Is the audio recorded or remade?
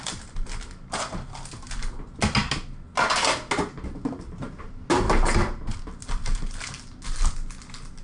recorded